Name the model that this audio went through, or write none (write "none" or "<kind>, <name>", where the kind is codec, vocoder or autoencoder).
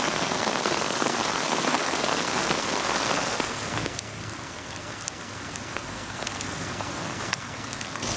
codec, SNAC